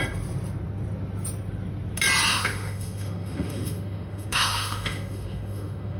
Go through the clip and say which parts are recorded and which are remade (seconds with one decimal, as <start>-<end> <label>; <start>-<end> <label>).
0.0-2.3 recorded; 2.3-6.0 remade